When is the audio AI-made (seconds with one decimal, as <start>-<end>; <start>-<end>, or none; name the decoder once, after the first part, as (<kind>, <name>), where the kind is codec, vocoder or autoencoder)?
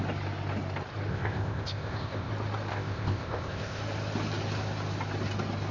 1.1-2.3 (codec, ZipCodec); 2.7-3.8